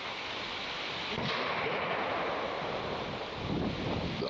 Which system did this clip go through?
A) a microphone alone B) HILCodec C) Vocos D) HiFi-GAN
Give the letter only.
A